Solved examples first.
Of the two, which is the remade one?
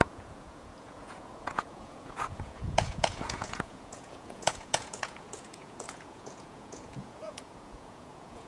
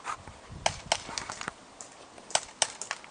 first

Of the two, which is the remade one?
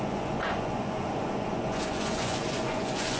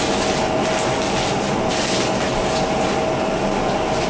first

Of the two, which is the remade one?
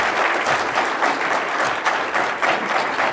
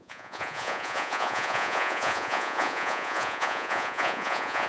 second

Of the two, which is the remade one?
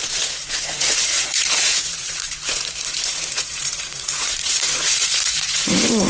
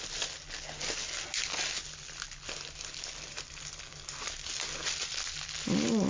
first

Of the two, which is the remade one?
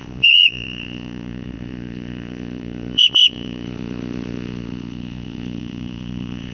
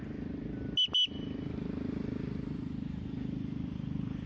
first